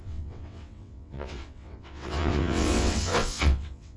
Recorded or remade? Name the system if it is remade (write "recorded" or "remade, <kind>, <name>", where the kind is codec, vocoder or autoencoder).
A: remade, vocoder, WaveNeXt